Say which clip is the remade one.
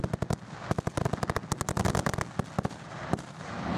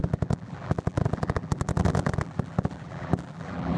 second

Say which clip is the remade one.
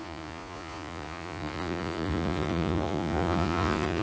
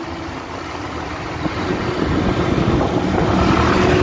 first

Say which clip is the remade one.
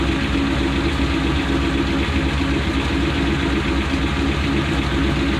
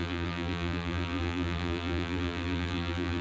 second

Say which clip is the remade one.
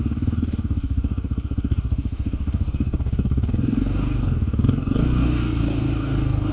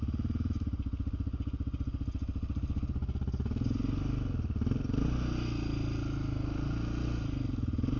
first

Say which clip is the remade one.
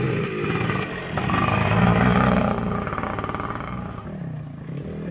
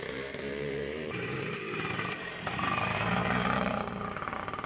second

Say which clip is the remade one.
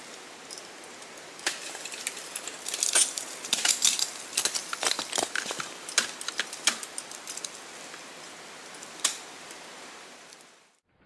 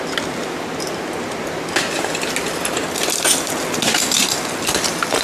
first